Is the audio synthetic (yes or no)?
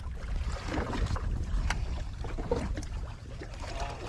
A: no